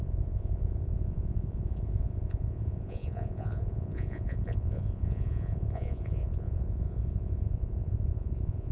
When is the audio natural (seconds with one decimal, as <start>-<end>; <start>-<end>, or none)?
none

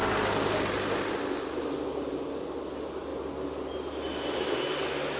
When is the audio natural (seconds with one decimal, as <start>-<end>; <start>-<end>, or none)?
0.0-5.2

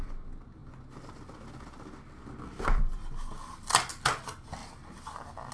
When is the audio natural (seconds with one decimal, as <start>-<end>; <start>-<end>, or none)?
0.0-5.5